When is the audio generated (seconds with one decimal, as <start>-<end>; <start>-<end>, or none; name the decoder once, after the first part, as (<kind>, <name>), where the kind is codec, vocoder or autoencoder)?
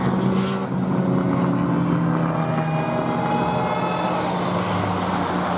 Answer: none